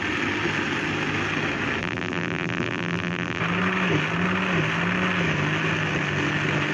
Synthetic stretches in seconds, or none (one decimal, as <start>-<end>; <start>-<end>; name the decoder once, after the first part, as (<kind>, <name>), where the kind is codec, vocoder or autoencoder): 1.8-3.4 (vocoder, BigVGAN v2)